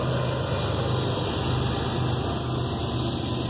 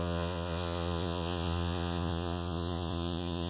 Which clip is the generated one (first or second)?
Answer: second